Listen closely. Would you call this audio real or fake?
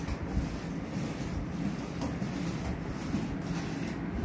real